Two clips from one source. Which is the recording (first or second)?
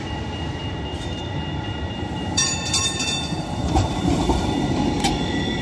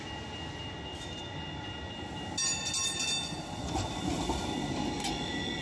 second